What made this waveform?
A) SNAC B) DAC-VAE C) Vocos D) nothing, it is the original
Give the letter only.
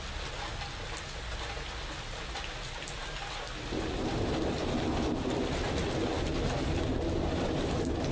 D